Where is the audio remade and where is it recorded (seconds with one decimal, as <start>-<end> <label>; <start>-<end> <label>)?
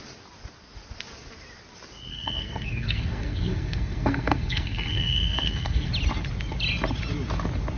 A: 0.0-2.1 recorded; 2.1-5.9 remade; 5.9-7.8 recorded